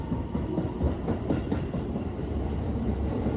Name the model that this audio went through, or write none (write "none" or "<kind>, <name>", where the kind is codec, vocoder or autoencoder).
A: none